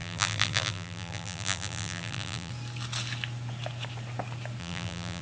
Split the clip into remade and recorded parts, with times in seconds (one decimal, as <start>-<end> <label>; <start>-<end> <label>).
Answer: 0.0-2.5 remade; 2.5-4.6 recorded; 4.6-5.2 remade